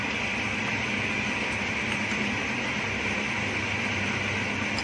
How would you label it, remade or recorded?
recorded